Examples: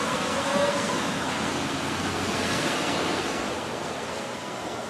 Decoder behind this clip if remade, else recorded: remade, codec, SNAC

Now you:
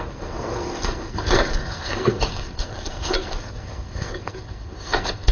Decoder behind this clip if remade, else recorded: remade, codec, SNAC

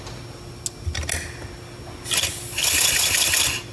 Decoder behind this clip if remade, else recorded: recorded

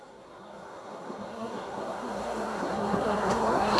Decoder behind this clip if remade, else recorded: remade, codec, SNAC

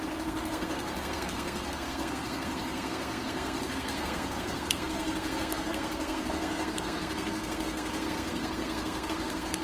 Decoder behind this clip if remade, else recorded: remade, codec, SNAC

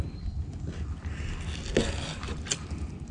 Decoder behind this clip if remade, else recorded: recorded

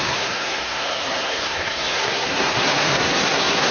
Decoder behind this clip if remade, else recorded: remade, codec, SNAC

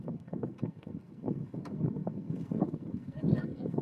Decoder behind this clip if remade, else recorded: remade, codec, SNAC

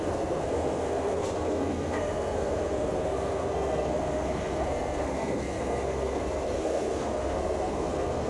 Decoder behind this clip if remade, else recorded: remade, codec, SNAC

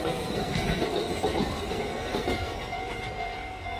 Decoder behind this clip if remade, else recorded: remade, codec, SNAC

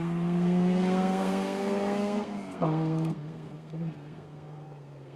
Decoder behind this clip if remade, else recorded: remade, codec, SNAC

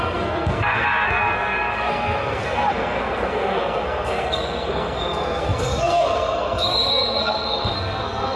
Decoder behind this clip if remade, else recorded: remade, codec, SNAC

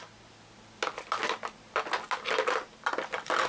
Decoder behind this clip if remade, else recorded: recorded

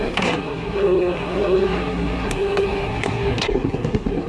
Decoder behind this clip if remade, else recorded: remade, codec, SNAC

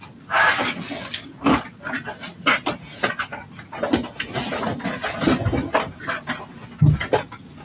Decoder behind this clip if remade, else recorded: recorded